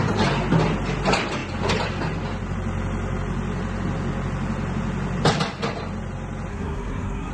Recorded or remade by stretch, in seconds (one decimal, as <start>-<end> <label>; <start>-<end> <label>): 0.0-6.5 recorded; 6.5-7.3 remade